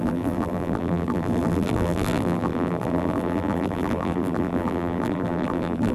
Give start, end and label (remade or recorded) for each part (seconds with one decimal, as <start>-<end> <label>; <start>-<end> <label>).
0.0-5.9 remade